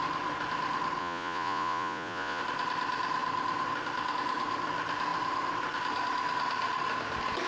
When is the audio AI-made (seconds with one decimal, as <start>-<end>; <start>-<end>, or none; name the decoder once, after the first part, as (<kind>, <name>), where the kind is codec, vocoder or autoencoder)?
1.0-2.4 (vocoder, Vocos)